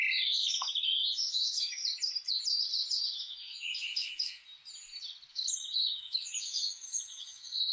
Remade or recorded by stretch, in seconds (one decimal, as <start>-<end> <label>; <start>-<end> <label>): 0.0-1.8 remade; 1.8-3.2 recorded; 3.2-4.4 remade; 4.4-5.3 recorded; 5.3-7.7 remade